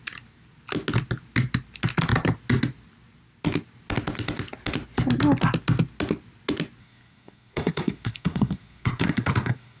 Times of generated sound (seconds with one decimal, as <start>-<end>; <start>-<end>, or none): 6.8-9.8